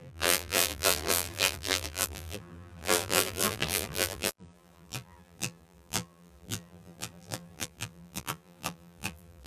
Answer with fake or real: fake